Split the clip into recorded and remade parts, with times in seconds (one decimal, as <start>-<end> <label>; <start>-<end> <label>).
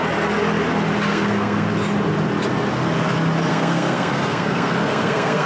0.0-1.1 recorded; 1.1-1.7 remade; 1.7-3.5 recorded; 3.5-5.5 remade